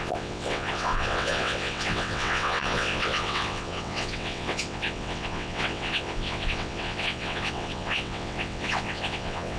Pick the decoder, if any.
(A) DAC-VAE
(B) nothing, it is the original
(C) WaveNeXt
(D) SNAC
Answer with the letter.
C